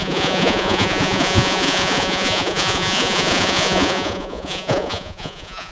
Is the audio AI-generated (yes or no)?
yes